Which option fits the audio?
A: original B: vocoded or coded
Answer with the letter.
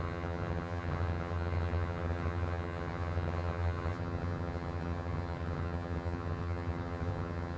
B